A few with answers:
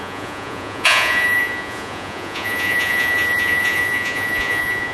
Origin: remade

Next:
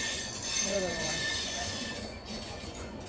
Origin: remade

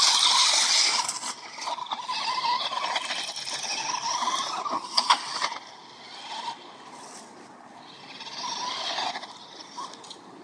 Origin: recorded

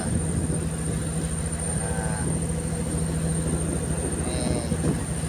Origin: recorded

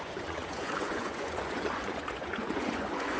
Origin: remade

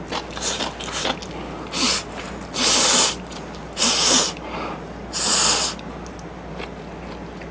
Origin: recorded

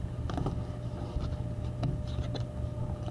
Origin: recorded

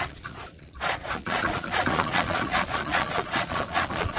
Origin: remade